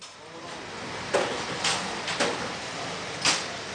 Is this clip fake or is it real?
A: real